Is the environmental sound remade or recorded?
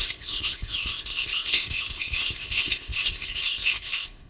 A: remade